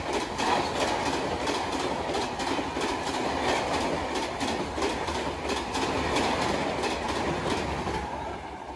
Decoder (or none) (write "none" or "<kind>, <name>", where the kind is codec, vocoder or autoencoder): none